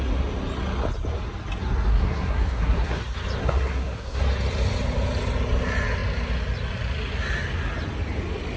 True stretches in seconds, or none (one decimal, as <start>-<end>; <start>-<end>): 0.0-1.9; 3.0-3.4; 4.2-8.6